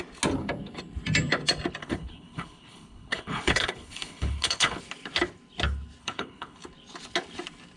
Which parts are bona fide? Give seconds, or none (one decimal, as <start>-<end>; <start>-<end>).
0.0-1.8; 4.8-6.0; 6.6-7.8